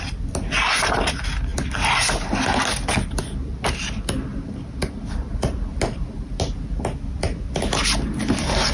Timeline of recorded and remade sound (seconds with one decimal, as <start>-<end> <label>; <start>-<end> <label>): 0.0-8.7 recorded